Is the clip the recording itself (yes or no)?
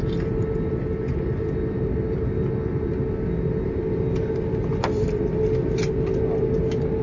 yes